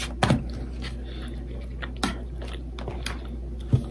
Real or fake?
real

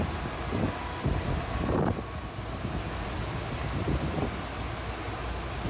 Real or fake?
real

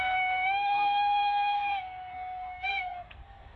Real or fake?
fake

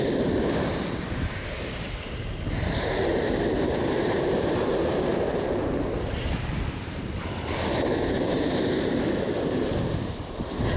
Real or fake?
fake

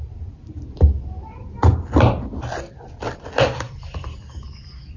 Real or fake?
real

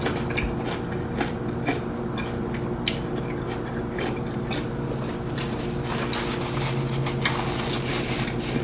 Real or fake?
real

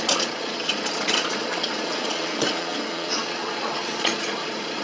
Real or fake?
fake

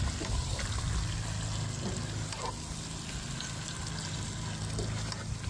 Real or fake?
real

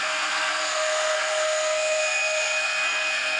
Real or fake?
fake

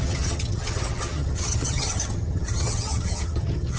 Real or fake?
fake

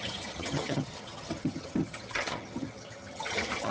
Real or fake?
fake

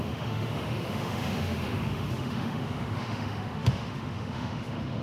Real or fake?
fake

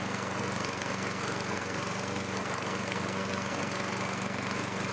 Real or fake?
fake